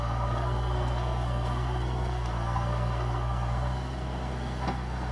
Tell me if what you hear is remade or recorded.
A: remade